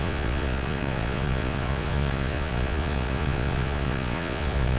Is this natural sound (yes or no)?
no